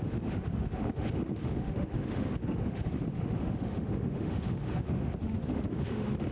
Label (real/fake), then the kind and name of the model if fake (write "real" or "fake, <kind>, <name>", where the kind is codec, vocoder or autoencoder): fake, autoencoder, DAC-VAE